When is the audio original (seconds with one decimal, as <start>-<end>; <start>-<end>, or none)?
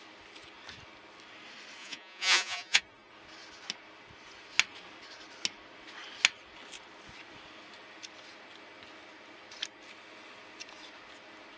0.0-1.8; 2.8-11.6